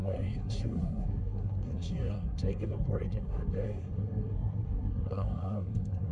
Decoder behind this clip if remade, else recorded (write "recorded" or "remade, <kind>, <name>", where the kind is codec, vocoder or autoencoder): remade, codec, SNAC